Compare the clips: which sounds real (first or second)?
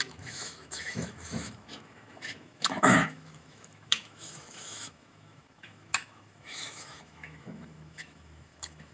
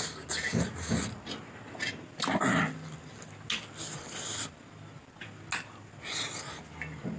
second